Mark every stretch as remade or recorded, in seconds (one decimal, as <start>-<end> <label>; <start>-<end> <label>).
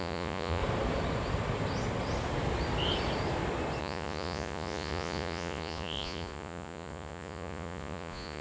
0.0-0.6 remade; 0.6-3.8 recorded; 3.8-8.4 remade